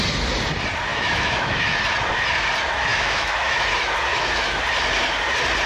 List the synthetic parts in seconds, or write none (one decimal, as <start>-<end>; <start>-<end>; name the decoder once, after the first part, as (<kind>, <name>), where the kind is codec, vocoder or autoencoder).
0.9-1.8 (autoencoder, DAC-VAE); 2.9-3.6; 4.1-4.6